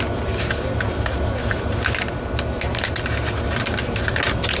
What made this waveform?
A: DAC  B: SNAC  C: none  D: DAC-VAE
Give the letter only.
C